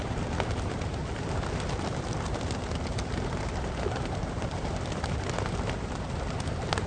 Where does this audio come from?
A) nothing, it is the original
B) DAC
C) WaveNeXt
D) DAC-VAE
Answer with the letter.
A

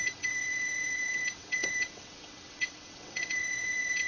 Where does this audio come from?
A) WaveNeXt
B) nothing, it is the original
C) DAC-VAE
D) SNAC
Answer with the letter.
A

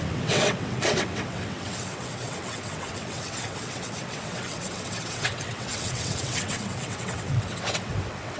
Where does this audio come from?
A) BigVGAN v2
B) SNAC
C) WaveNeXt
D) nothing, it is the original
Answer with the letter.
C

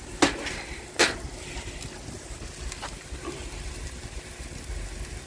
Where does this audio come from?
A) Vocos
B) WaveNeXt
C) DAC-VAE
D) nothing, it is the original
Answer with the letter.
D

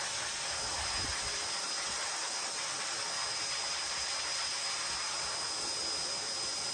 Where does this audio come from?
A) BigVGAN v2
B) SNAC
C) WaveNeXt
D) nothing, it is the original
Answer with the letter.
D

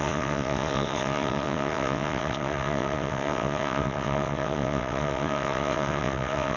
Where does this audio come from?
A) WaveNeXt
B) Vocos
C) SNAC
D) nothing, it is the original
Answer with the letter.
A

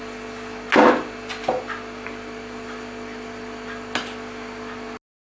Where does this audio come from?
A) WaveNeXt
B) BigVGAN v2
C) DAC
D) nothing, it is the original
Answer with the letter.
D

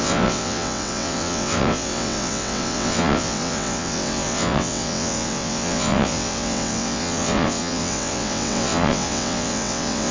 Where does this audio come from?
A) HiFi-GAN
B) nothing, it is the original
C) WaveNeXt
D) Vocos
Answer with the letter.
C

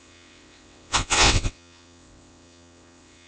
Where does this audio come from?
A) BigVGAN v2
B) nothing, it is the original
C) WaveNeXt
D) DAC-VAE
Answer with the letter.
C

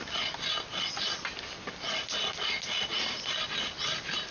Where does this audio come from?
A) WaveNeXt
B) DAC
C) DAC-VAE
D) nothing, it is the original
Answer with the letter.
D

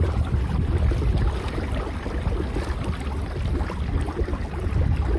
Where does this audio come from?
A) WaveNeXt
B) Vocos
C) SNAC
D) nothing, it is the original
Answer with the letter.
D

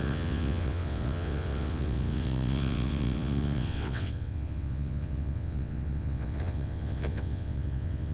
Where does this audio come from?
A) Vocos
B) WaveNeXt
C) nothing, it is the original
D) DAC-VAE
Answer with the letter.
B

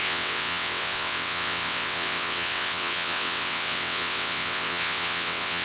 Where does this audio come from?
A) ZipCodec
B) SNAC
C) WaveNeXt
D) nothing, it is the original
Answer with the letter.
C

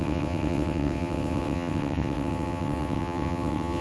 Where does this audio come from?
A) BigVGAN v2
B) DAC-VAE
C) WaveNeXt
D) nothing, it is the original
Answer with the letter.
C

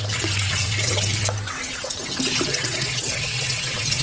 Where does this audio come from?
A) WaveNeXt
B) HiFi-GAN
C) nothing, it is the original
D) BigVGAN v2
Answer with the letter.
A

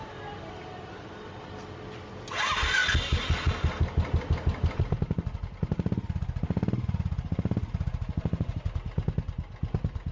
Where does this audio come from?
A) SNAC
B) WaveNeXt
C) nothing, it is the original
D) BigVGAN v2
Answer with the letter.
C